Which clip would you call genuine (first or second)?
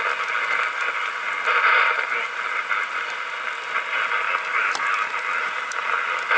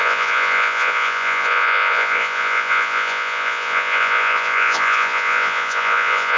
first